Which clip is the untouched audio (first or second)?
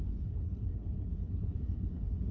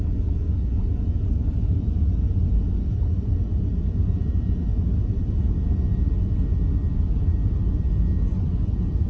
second